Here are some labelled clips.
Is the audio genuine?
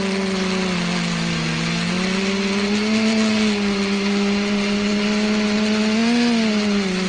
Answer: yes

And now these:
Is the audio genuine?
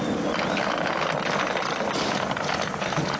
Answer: yes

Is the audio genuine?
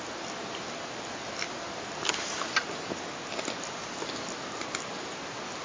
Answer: yes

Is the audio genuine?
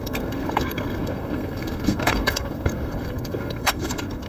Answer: no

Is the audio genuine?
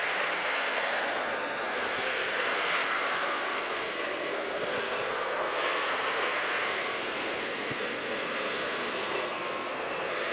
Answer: no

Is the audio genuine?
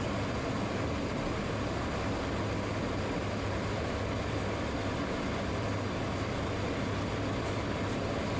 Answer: yes